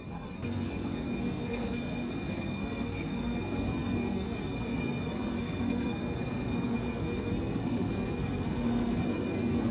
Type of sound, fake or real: fake